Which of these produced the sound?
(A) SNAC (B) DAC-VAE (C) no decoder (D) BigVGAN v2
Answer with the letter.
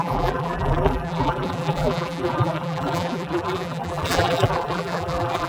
D